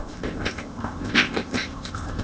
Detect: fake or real fake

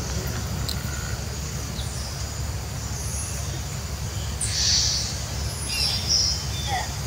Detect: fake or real real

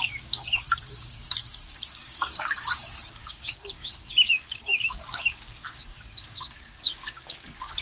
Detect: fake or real fake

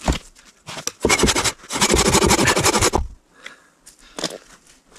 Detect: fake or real real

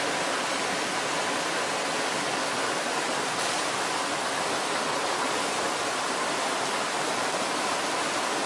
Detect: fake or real real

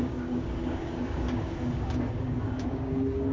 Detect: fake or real fake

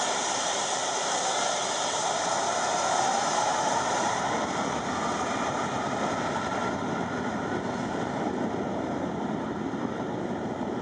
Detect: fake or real fake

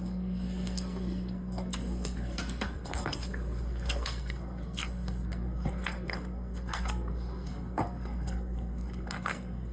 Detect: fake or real fake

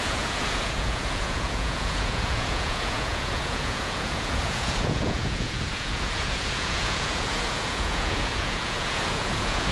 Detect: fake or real fake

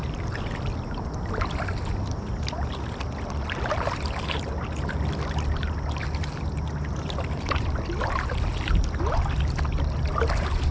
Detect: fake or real real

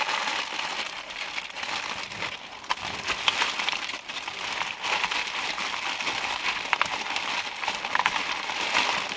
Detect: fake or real real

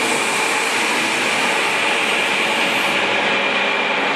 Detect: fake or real real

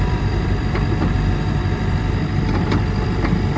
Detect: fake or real fake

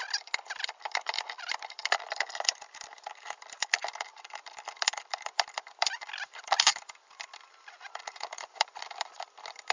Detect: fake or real fake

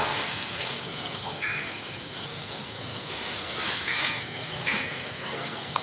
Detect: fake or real fake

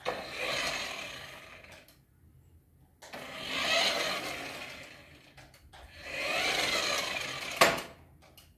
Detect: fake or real real